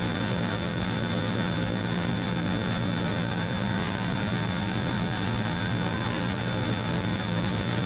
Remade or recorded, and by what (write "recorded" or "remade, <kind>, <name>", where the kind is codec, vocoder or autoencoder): remade, vocoder, BigVGAN v2